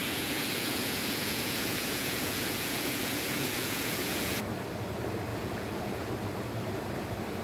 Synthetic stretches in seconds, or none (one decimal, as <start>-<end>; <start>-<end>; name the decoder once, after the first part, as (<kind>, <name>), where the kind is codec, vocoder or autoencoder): 0.0-4.4 (vocoder, Vocos); 5.3-6.1